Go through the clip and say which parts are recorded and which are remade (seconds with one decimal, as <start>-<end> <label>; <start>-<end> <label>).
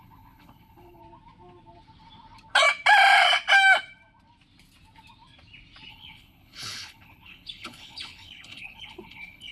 0.0-1.0 remade; 1.0-5.9 recorded; 5.9-9.5 remade